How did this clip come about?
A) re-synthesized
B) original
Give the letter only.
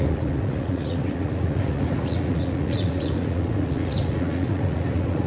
A